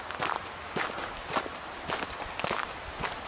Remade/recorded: recorded